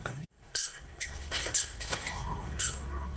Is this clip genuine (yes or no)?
no